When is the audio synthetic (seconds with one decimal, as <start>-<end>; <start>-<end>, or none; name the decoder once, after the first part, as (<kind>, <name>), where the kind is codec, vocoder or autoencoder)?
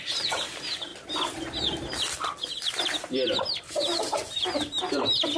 0.0-0.9 (vocoder, BigVGAN v2); 3.6-5.4